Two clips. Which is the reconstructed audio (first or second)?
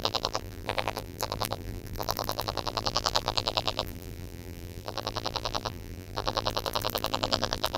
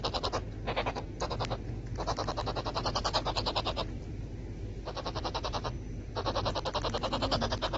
first